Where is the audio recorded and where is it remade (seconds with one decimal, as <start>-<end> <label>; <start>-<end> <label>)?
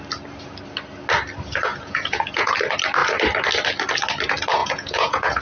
0.0-1.7 recorded; 1.7-2.5 remade; 2.5-4.6 recorded; 4.6-5.4 remade